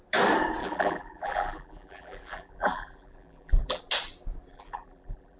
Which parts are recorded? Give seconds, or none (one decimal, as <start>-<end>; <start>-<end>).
0.0-0.6; 3.8-4.5